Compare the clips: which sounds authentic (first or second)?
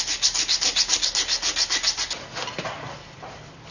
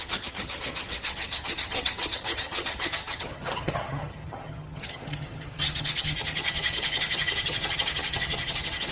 first